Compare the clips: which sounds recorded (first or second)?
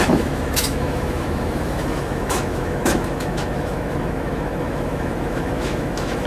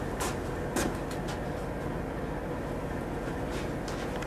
second